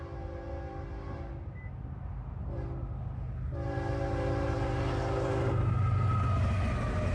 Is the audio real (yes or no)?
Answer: yes